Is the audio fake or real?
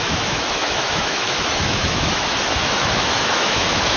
fake